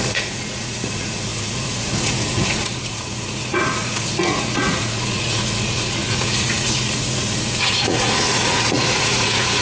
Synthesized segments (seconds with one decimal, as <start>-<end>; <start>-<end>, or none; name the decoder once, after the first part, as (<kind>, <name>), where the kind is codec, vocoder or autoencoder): 0.0-9.6 (vocoder, Vocos)